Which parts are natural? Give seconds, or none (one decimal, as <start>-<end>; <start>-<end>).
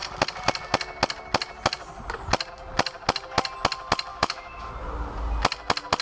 0.0-4.1; 4.7-6.0